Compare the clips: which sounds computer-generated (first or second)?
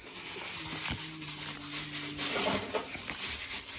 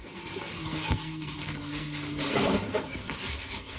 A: second